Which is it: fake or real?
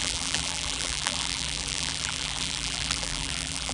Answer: fake